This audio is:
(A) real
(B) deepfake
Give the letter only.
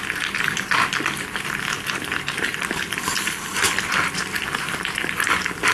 A